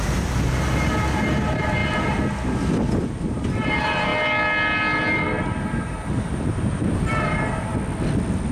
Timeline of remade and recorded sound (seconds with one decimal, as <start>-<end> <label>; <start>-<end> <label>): 0.0-1.8 remade; 1.8-2.9 recorded; 2.9-4.1 remade; 4.1-5.4 recorded; 5.4-7.7 remade; 7.7-8.5 recorded